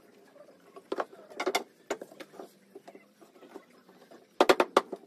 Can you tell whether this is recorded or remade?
recorded